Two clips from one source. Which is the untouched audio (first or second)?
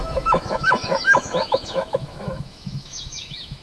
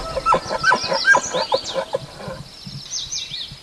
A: second